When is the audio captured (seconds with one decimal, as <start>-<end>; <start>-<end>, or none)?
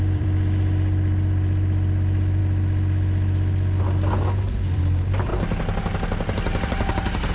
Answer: 2.4-4.5; 5.3-7.3